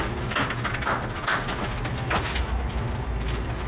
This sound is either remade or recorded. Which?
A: recorded